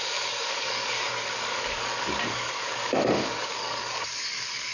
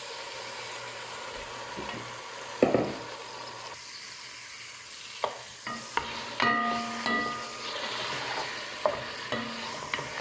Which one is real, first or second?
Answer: second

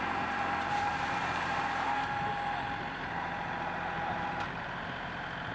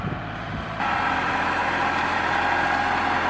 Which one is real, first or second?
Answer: second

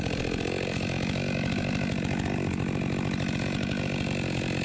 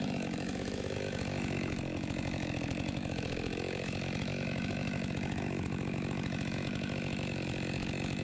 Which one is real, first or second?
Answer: first